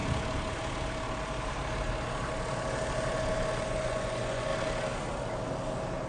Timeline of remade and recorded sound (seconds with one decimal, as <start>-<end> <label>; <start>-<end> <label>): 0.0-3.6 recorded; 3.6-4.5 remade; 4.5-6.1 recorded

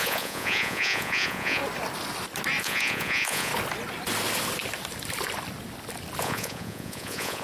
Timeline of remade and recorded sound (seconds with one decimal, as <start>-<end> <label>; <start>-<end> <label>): 0.0-1.6 remade; 1.6-2.6 recorded; 2.6-3.5 remade; 3.5-6.2 recorded; 6.2-7.4 remade

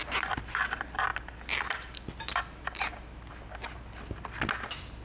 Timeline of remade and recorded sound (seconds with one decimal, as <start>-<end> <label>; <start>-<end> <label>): 0.0-5.0 recorded